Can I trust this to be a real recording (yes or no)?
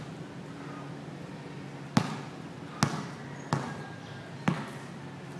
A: yes